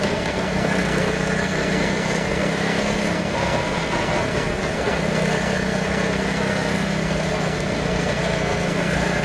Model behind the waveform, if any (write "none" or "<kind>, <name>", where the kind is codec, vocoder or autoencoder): codec, SNAC